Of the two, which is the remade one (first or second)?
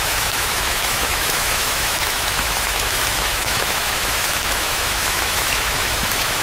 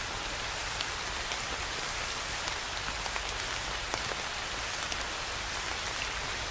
first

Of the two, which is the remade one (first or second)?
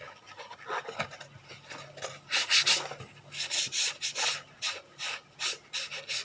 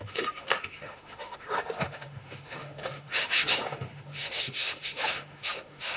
second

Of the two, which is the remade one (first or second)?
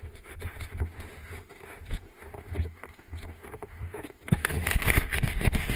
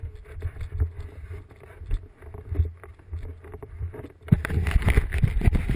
first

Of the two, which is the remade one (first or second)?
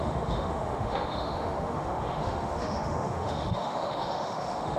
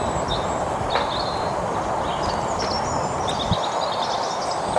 first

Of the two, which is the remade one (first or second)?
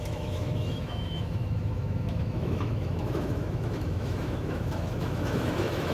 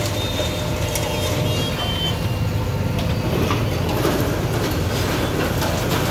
first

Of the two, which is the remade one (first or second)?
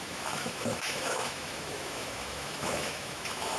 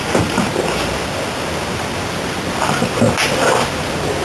first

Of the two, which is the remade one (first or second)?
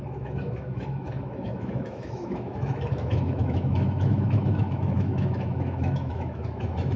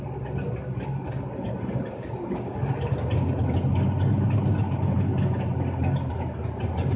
first